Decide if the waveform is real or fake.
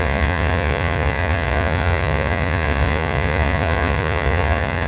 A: fake